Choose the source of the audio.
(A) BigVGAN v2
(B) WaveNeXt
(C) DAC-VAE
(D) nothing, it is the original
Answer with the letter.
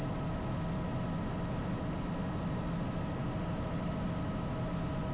D